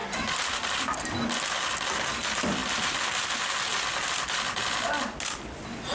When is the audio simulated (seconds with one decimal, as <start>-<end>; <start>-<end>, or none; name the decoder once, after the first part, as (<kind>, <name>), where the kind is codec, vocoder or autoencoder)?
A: none